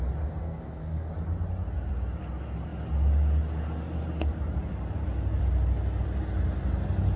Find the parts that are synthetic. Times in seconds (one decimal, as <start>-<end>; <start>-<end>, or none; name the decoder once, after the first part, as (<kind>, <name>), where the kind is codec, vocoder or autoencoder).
0.4-1.1 (codec, SNAC)